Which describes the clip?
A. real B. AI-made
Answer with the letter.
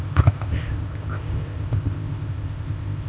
B